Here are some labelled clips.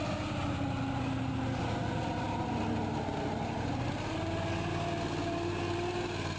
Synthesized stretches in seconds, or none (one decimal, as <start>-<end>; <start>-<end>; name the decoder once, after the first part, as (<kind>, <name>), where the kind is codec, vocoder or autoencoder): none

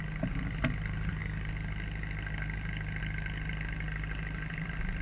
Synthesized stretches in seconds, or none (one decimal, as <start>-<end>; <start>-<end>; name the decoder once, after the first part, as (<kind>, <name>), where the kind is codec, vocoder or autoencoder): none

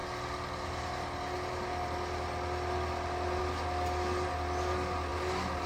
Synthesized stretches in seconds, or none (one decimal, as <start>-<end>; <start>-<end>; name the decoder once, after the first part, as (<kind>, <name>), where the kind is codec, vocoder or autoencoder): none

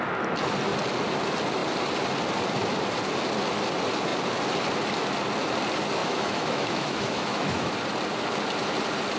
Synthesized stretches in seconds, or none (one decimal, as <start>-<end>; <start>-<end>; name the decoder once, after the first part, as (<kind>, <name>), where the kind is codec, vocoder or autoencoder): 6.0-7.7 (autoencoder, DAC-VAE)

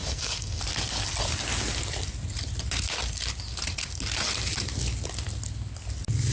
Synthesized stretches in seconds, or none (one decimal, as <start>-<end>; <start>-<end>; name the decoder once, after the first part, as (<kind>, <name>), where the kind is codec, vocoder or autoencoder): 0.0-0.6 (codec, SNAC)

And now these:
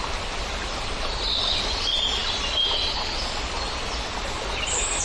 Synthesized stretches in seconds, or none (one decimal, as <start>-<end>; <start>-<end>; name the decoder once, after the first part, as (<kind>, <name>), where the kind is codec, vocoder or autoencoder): none

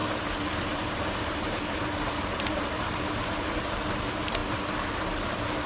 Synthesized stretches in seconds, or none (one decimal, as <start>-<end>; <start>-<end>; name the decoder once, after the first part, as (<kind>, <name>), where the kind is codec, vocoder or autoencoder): none